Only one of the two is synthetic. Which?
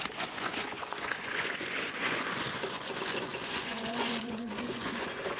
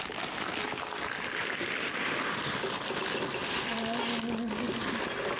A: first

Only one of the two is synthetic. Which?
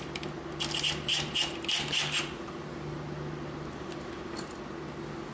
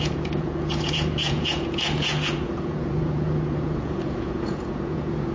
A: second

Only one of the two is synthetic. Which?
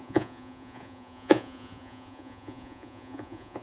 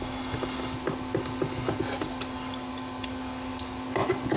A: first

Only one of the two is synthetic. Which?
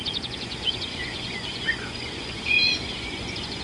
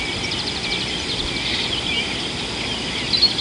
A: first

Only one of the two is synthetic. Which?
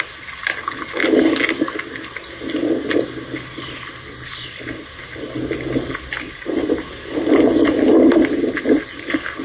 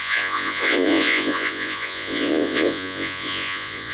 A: second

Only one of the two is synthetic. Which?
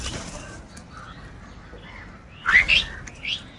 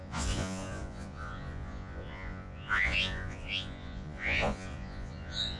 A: second